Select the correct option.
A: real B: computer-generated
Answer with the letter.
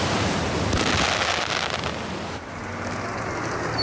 A